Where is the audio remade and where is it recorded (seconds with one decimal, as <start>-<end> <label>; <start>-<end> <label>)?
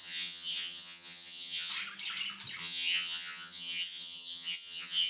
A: 0.0-1.7 remade; 1.7-2.6 recorded; 2.6-5.1 remade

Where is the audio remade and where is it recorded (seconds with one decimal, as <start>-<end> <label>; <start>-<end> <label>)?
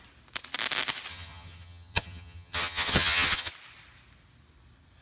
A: 0.0-1.1 recorded; 1.1-3.5 remade; 3.5-5.0 recorded